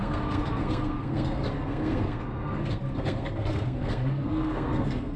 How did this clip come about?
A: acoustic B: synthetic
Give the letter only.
B